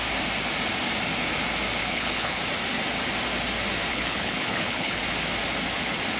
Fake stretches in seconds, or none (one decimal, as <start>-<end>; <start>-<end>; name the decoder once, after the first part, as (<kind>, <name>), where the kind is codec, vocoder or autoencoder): 1.8-2.4 (codec, HILCodec); 3.9-5.0